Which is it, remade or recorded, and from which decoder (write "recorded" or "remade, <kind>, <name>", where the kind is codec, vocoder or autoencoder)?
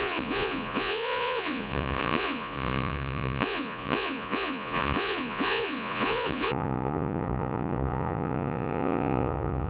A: remade, vocoder, Vocos